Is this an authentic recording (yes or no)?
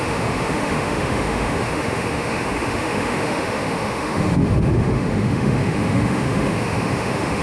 no